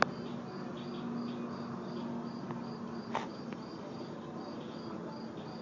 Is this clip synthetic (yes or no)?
no